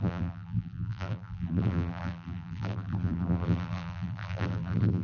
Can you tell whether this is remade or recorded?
remade